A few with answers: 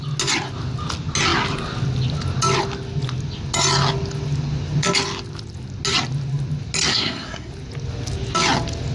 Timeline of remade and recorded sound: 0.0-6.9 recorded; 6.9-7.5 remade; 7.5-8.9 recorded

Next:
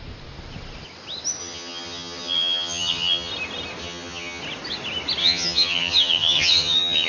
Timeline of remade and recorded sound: 0.0-1.4 recorded; 1.4-3.3 remade; 3.3-3.8 recorded; 3.8-4.4 remade; 4.4-5.2 recorded; 5.2-7.1 remade

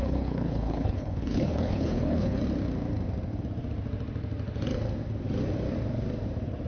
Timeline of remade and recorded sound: 0.0-2.4 remade; 2.4-6.7 recorded